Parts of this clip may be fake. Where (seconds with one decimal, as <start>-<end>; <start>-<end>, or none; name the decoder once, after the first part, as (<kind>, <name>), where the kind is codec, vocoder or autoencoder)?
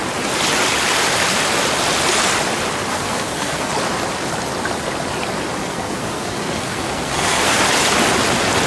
2.9-3.7 (codec, SNAC); 5.6-7.6